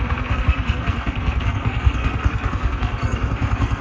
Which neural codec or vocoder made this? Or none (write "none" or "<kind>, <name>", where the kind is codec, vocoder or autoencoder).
codec, SNAC